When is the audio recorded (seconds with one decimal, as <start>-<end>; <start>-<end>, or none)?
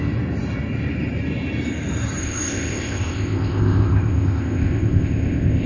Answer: 0.0-2.2